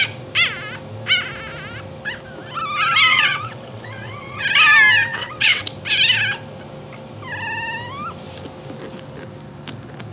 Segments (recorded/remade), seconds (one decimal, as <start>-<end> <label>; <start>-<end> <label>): 0.0-3.1 recorded; 3.1-4.4 remade; 4.4-5.1 recorded; 5.1-5.6 remade; 5.6-10.1 recorded